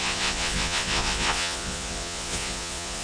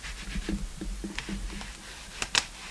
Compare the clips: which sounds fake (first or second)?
first